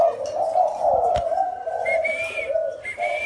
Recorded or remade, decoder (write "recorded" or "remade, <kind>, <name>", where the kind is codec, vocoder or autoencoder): recorded